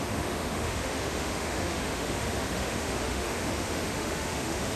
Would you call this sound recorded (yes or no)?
no